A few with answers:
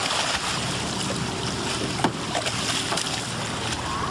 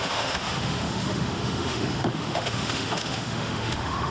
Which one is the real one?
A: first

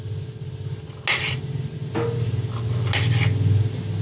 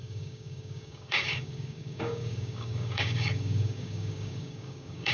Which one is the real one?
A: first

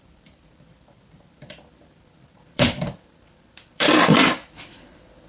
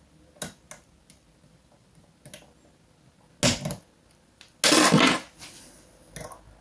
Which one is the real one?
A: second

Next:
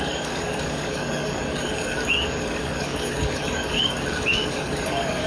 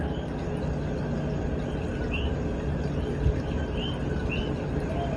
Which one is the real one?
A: second